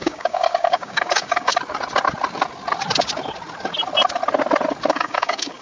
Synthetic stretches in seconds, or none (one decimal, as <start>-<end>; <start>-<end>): 0.0-1.5; 4.9-5.6